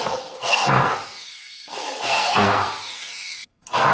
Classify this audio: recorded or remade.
remade